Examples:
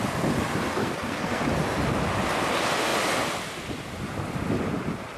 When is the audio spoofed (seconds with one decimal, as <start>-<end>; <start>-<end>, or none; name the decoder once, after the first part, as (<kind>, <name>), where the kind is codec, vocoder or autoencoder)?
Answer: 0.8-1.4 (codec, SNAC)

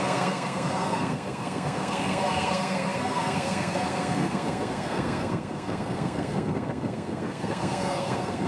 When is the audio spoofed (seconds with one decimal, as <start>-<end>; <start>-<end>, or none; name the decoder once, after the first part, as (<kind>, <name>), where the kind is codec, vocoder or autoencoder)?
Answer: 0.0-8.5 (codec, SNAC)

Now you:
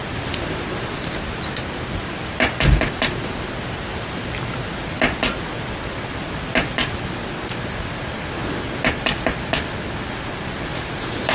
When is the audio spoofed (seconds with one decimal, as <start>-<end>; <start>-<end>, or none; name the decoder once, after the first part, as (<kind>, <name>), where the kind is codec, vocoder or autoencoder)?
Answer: none

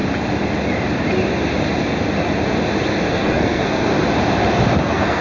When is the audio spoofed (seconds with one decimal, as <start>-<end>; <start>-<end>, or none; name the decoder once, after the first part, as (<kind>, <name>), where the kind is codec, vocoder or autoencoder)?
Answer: 3.1-3.9 (codec, SNAC); 4.8-5.2